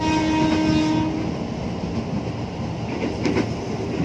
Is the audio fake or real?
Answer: real